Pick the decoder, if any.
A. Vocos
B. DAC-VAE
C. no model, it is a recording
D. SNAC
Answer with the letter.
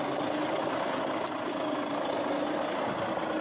C